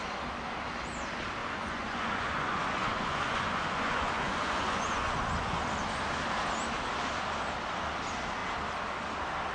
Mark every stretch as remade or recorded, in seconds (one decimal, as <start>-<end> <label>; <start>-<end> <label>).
0.0-1.4 recorded; 1.4-5.6 remade; 5.6-9.5 recorded